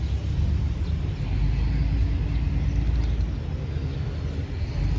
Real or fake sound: real